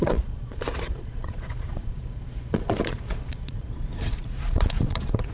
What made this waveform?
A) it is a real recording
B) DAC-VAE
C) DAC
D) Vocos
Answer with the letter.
D